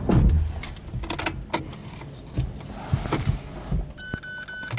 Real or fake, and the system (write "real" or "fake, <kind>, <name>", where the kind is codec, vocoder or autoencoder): real